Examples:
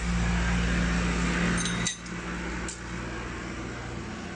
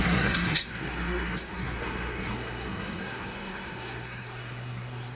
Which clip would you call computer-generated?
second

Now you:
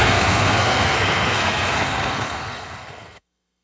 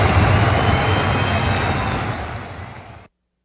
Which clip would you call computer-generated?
first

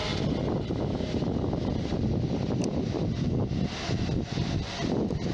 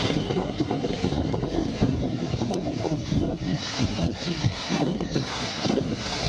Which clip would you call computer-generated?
second